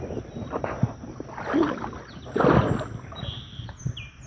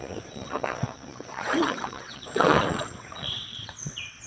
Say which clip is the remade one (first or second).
second